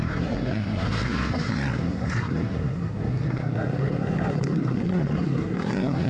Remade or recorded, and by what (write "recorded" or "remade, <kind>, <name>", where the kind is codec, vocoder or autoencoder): remade, codec, SNAC